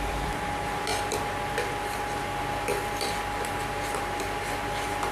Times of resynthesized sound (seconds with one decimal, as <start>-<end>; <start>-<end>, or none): 0.0-0.9; 2.4-5.1